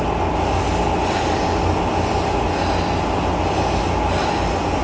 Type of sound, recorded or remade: recorded